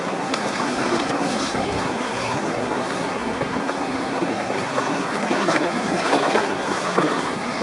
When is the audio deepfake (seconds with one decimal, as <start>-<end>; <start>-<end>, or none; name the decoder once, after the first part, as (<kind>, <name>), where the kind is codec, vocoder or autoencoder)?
0.0-7.6 (codec, SNAC)